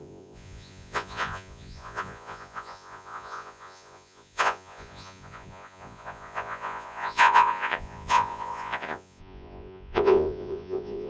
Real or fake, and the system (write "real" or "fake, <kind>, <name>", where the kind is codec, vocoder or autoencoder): fake, vocoder, Vocos